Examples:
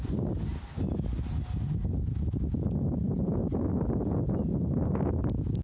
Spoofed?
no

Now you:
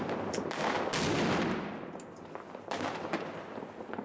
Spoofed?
no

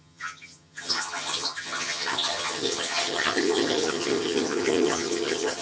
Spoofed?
yes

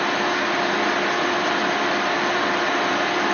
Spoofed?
no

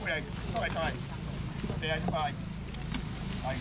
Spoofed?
no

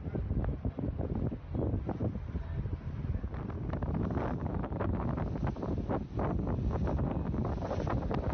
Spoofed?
no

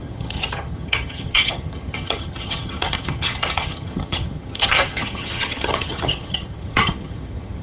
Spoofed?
yes